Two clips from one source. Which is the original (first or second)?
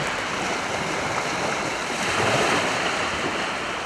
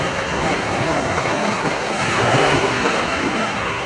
first